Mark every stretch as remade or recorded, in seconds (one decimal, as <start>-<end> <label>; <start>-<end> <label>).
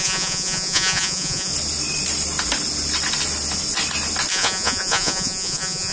0.0-1.5 remade; 1.5-4.3 recorded; 4.3-5.9 remade